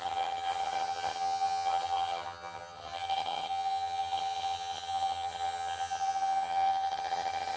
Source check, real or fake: fake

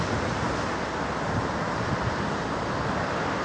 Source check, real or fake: real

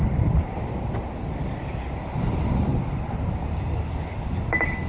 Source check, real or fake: real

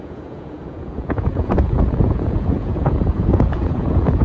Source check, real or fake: fake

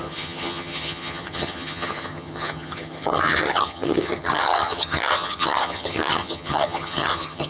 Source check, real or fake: fake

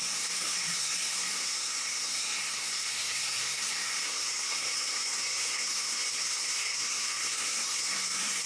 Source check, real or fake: fake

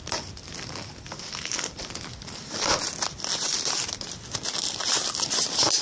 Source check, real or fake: real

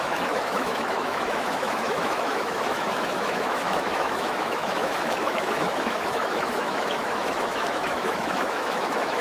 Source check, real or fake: fake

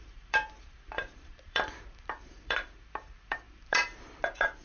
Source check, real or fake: fake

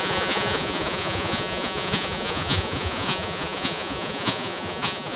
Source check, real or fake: fake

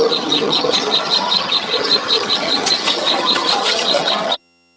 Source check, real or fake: fake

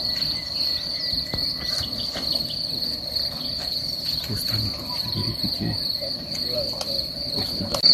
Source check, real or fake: real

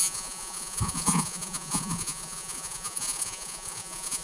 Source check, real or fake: fake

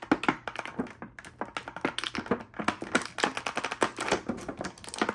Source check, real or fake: real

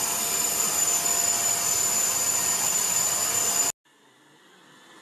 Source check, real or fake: real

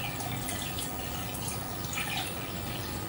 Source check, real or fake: real